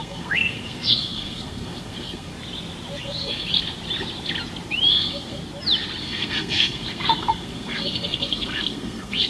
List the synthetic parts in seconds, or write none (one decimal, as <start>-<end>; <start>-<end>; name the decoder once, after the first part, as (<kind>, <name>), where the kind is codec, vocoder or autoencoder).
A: 0.0-2.3 (codec, SNAC); 3.0-3.5; 4.9-5.4; 6.0-9.3